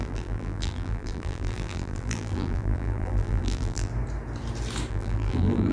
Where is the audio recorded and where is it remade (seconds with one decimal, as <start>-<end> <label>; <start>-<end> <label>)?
0.0-3.9 remade; 3.9-4.9 recorded; 4.9-5.7 remade